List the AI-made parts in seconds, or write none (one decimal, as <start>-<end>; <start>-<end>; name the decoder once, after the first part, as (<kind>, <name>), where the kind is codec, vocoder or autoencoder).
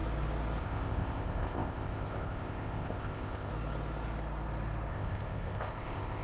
0.6-3.5 (codec, ZipCodec); 4.9-6.2